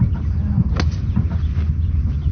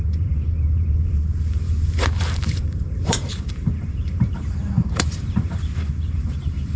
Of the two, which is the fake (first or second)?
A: second